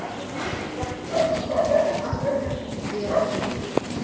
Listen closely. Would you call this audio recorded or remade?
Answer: recorded